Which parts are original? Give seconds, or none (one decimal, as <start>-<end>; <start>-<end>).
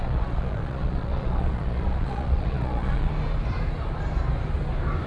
3.1-5.1